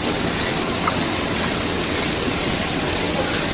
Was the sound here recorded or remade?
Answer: remade